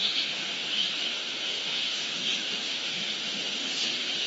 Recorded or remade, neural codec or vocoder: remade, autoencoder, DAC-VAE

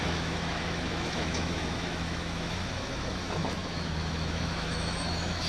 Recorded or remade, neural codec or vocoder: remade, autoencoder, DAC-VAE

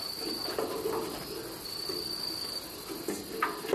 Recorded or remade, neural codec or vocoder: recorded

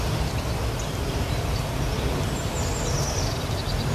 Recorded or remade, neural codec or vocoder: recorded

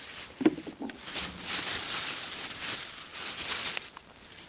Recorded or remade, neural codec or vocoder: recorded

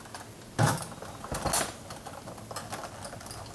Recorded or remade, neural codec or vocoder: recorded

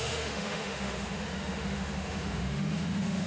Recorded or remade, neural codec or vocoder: remade, autoencoder, DAC-VAE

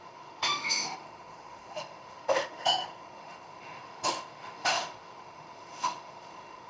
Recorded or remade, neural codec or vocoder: remade, autoencoder, DAC-VAE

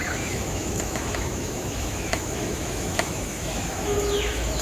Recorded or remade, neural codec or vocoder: remade, autoencoder, DAC-VAE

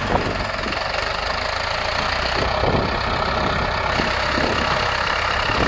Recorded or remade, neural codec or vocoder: recorded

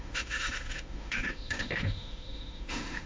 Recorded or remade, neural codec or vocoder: remade, autoencoder, DAC-VAE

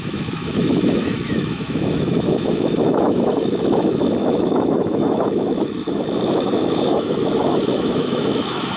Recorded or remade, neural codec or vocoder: remade, autoencoder, DAC-VAE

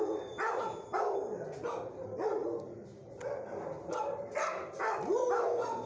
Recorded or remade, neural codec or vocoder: recorded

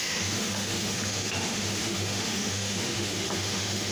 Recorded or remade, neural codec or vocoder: remade, autoencoder, DAC-VAE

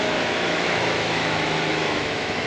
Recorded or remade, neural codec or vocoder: remade, autoencoder, DAC-VAE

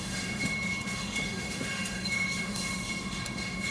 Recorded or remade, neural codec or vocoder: remade, autoencoder, DAC-VAE